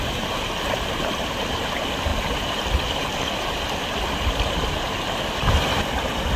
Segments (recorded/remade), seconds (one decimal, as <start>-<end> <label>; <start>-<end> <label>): 0.0-6.4 recorded